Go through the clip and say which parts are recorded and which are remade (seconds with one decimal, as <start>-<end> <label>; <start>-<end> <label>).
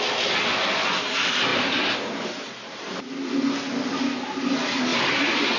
0.0-1.5 recorded; 1.5-3.0 remade; 3.0-4.9 recorded; 4.9-5.6 remade